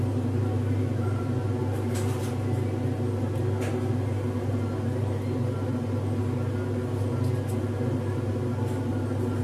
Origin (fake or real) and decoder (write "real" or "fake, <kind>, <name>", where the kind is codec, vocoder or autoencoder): real